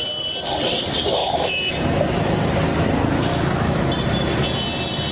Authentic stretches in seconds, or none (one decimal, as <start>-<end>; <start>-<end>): 0.0-1.2; 1.7-3.3; 3.9-5.1